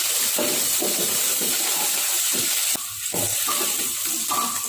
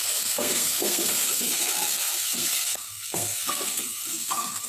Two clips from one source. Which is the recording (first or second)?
first